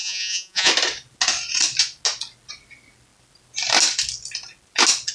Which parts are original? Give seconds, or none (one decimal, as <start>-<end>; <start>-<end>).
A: 0.7-5.1